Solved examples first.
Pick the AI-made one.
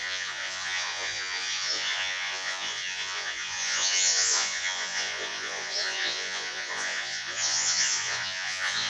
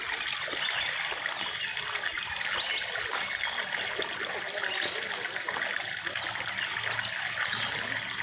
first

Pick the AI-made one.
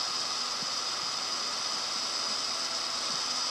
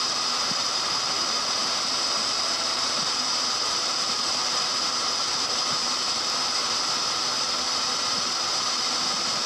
second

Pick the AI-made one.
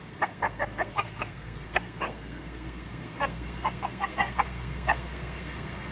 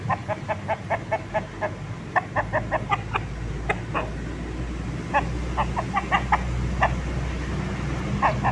first